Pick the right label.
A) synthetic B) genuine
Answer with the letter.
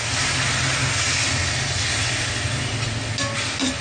B